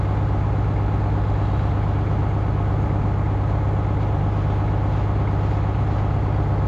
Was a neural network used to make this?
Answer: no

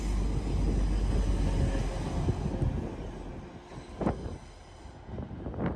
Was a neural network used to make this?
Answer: no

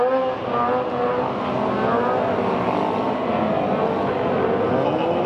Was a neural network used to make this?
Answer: no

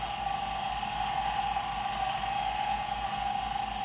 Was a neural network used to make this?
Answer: no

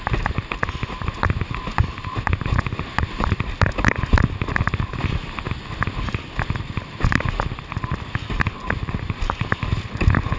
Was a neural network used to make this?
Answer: no